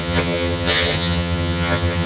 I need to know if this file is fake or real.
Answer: fake